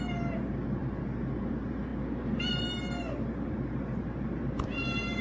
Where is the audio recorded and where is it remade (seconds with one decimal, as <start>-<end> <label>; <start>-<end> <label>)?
0.0-5.2 recorded